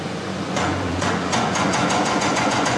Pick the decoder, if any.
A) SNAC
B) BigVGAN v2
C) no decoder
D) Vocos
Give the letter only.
D